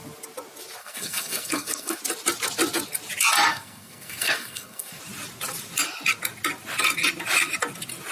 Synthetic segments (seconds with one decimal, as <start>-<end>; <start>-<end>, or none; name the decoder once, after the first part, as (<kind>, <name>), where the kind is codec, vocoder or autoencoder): 0.8-2.0 (codec, SNAC); 3.5-5.0